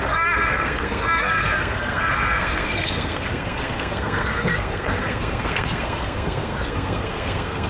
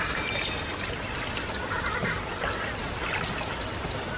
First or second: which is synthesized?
first